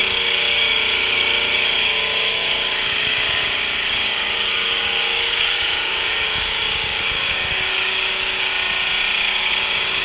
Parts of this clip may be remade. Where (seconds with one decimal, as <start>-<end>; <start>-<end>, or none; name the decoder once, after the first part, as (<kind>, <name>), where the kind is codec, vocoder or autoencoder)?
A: 0.0-8.5 (codec, DAC); 9.4-10.0